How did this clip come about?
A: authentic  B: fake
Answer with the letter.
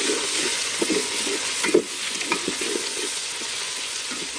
B